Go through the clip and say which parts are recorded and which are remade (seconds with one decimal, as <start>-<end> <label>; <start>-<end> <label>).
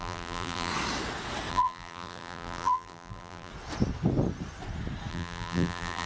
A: 0.0-0.7 remade; 0.7-1.5 recorded; 1.5-3.5 remade; 3.5-5.1 recorded; 5.1-6.1 remade